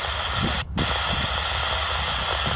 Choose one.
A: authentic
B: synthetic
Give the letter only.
A